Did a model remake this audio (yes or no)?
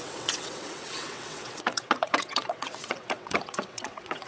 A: yes